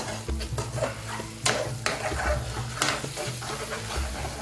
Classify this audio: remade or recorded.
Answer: recorded